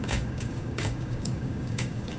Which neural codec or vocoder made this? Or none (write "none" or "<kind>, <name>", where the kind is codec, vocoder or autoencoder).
codec, DAC